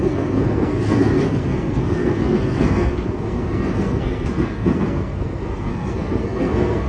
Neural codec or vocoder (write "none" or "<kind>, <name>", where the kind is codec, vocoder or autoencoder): codec, SNAC